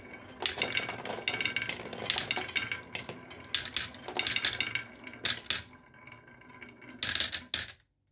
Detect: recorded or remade recorded